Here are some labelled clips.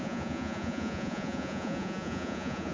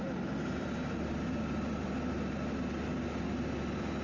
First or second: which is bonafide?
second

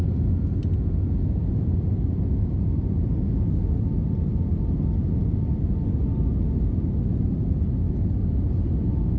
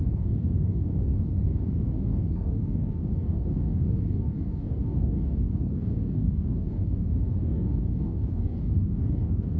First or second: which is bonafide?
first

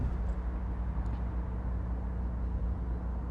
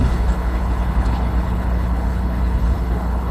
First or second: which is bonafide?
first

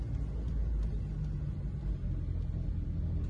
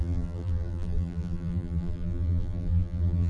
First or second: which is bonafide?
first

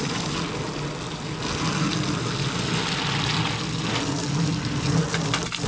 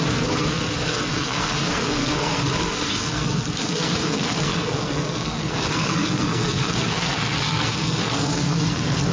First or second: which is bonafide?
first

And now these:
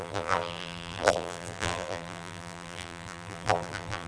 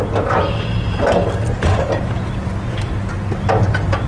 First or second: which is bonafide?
second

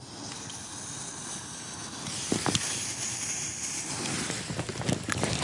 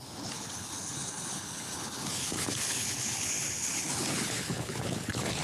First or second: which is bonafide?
first